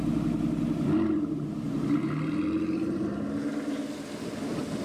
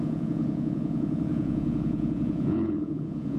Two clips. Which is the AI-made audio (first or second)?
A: second